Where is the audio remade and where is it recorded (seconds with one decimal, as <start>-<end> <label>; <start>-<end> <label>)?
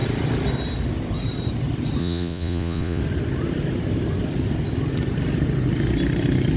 0.0-2.0 recorded; 2.0-3.0 remade; 3.0-6.6 recorded